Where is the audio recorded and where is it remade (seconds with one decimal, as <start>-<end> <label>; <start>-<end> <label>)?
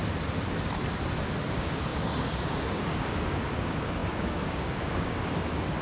0.0-1.5 recorded; 1.5-5.8 remade